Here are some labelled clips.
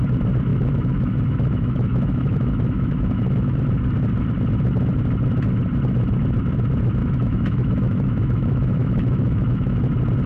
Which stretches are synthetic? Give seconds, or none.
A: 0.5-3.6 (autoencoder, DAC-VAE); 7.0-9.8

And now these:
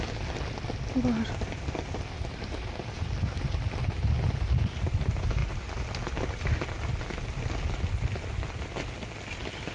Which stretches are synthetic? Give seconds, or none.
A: none